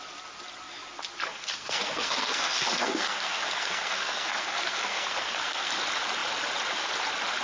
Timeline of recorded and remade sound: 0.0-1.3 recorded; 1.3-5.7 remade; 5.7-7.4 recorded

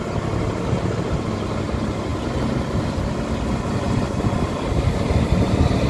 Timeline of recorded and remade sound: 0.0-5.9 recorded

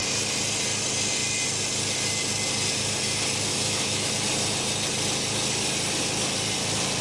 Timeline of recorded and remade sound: 0.0-3.5 recorded; 3.5-4.1 remade; 4.1-7.0 recorded

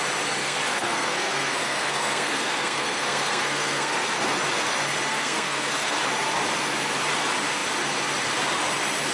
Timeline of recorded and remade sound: 0.0-0.4 recorded; 0.4-4.2 remade; 4.2-5.1 recorded; 5.1-6.0 remade; 6.0-9.1 recorded

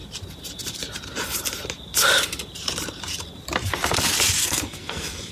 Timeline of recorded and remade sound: 0.0-4.4 recorded; 4.4-5.3 remade